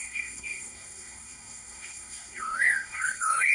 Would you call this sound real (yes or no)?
no